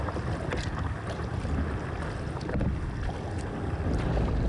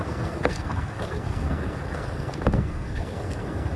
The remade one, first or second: second